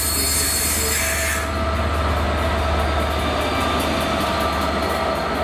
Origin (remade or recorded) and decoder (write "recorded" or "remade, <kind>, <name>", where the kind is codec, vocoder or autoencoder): recorded